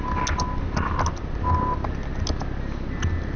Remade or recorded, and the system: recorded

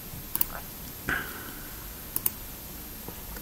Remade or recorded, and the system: recorded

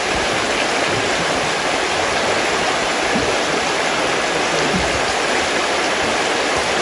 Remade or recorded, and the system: recorded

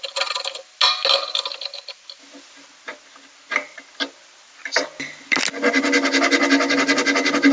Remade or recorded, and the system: recorded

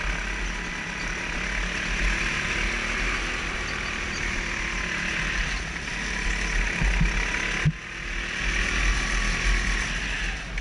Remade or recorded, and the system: recorded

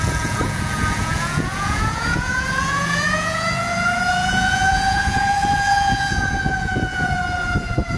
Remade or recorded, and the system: remade, vocoder, Vocos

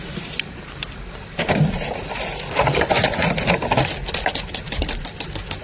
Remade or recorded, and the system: recorded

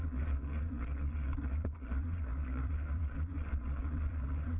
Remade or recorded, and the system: remade, vocoder, Vocos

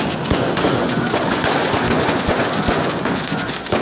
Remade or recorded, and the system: remade, vocoder, Vocos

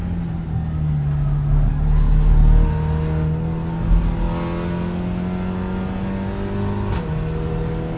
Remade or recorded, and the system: recorded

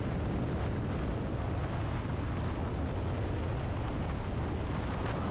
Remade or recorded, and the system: recorded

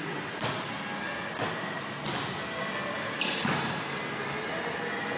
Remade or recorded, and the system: recorded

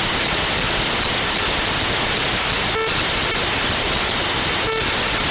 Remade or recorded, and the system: recorded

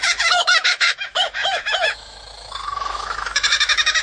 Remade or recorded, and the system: remade, autoencoder, DAC-VAE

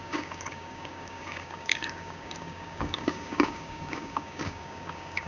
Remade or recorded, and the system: remade, codec, DAC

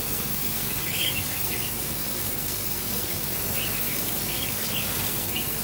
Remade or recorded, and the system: remade, codec, SNAC